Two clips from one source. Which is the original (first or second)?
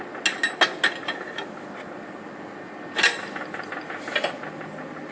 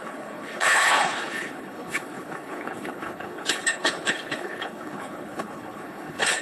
first